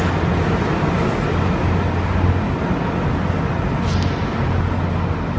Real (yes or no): yes